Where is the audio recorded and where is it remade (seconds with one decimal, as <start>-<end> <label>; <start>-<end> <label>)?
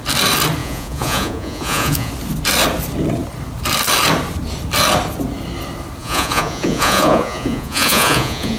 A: 0.0-0.6 recorded; 0.6-2.1 remade; 2.1-6.0 recorded; 6.0-8.6 remade